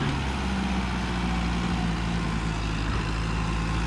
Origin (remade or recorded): recorded